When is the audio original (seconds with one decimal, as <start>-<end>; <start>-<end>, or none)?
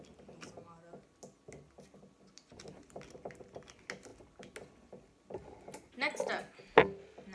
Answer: 0.0-7.3